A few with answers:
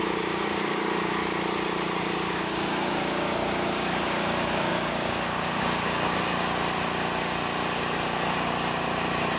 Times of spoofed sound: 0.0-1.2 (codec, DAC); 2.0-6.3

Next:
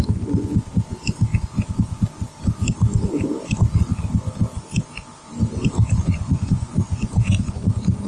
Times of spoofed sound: 6.0-8.1 (vocoder, Vocos)

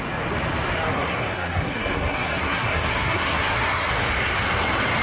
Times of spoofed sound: 0.9-3.9 (codec, SNAC)

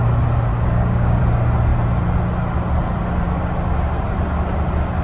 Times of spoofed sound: 0.5-1.2 (codec, DAC)

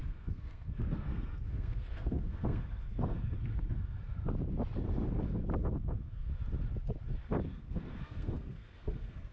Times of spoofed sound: 0.0-4.0 (codec, SNAC); 5.6-6.3; 7.5-9.3